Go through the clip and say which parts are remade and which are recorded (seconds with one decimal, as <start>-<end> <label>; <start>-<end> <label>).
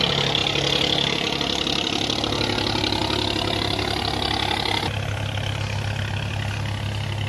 0.0-7.3 recorded